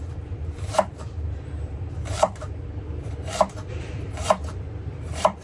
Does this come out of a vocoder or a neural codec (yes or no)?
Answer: yes